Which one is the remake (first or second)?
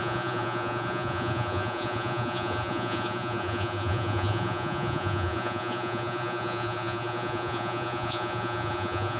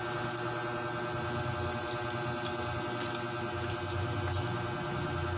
first